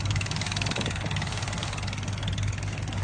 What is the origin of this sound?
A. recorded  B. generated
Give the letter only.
B